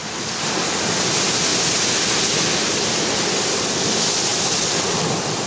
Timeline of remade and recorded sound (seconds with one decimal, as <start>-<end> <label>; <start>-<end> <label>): 0.0-5.5 recorded